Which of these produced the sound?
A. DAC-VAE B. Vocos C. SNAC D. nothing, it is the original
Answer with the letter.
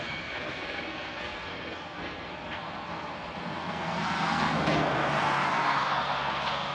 C